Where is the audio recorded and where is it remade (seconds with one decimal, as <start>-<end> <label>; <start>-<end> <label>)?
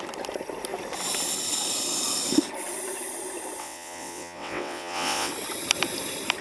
0.0-3.6 recorded; 3.6-5.3 remade; 5.3-6.4 recorded